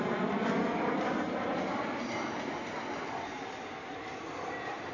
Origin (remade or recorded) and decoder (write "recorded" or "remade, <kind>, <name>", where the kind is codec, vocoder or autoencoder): recorded